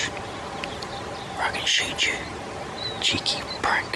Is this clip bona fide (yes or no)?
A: yes